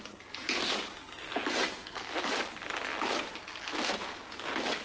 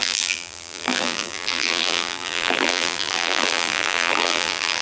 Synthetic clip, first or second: second